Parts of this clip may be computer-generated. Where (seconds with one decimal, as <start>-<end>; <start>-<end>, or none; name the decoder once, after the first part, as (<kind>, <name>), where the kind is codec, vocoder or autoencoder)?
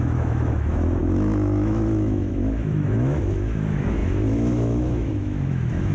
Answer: 0.0-5.9 (autoencoder, DAC-VAE)